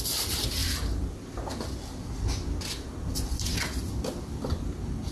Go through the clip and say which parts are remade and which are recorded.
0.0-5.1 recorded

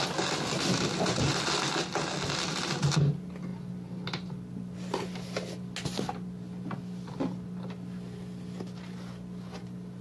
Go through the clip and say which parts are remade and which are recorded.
0.0-10.0 recorded

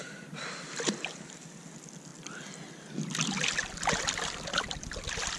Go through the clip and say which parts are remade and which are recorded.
0.0-5.4 recorded

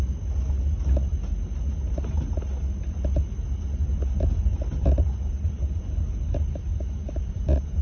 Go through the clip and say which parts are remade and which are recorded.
0.0-4.5 recorded; 4.5-5.8 remade; 5.8-6.7 recorded; 6.7-7.8 remade

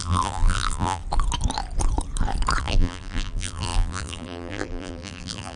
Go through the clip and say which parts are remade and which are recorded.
0.0-1.0 remade; 1.0-2.6 recorded; 2.6-5.6 remade

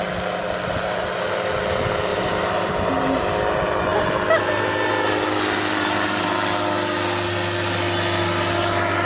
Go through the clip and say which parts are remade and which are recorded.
0.0-2.1 recorded; 2.1-2.7 remade; 2.7-9.1 recorded

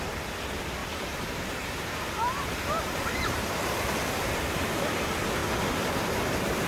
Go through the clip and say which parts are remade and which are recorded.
0.0-0.8 recorded; 0.8-4.8 remade; 4.8-6.7 recorded

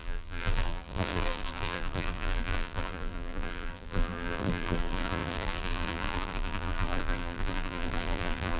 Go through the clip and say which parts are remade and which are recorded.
0.0-8.6 remade